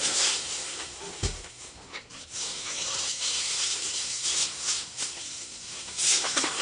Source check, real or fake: fake